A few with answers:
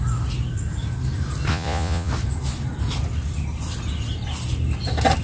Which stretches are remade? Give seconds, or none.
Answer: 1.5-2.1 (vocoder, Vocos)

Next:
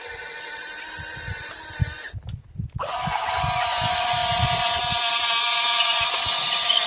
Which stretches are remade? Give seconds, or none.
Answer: none